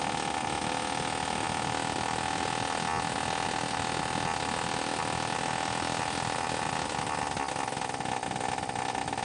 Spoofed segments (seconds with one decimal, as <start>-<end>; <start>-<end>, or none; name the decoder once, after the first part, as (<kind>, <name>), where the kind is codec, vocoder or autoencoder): none